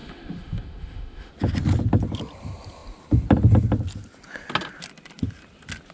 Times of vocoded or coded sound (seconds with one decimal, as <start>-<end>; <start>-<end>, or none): 0.0-1.3